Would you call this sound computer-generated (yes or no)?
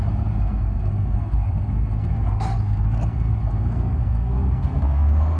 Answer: yes